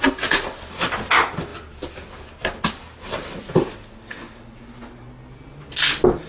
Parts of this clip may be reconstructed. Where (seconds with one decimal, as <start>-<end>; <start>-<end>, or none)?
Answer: none